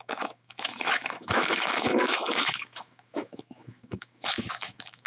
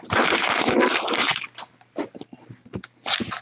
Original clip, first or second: second